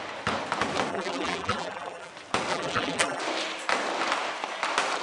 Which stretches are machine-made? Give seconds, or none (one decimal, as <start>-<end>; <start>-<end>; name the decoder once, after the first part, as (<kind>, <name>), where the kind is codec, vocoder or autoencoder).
0.9-2.1 (vocoder, BigVGAN v2); 2.5-3.2